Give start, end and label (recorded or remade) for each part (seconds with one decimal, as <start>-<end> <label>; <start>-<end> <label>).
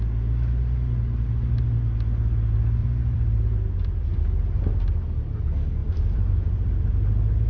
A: 0.0-2.8 recorded; 2.8-4.2 remade; 4.2-5.8 recorded; 5.8-6.9 remade; 6.9-7.5 recorded